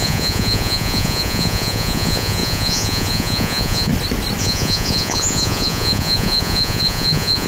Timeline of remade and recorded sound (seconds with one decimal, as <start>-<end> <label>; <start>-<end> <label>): 0.0-3.9 remade; 3.9-4.4 recorded; 4.4-7.5 remade